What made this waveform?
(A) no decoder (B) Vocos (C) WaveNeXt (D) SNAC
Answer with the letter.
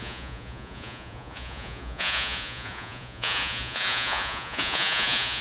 B